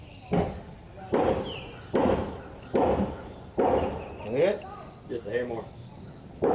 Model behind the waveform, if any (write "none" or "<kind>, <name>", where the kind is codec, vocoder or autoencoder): none